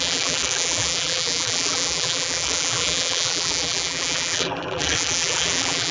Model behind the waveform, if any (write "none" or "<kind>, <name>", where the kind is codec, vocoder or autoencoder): vocoder, BigVGAN v2